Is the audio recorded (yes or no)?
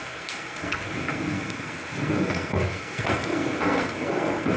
no